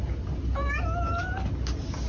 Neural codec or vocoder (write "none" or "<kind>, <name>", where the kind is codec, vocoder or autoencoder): none